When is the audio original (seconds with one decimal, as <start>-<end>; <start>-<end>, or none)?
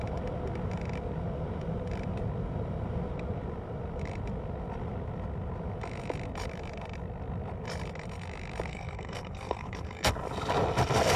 0.0-8.7; 10.1-11.2